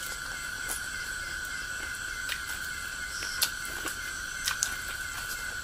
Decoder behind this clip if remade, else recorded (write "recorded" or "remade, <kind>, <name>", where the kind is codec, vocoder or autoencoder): recorded